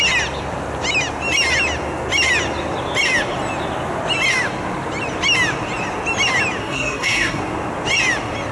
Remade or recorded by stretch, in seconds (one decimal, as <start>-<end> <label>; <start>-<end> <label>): 0.0-6.6 recorded; 6.6-7.4 remade; 7.4-8.5 recorded

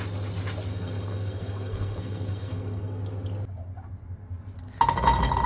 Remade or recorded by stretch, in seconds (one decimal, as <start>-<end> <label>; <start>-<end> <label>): 0.0-0.7 recorded; 0.7-3.0 remade; 3.0-5.5 recorded